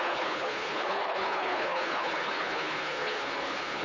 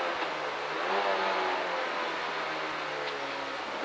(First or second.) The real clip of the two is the second